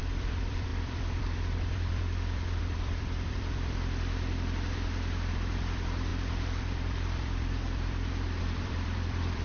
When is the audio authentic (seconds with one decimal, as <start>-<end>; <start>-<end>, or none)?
none